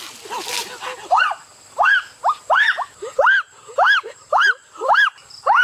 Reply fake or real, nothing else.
fake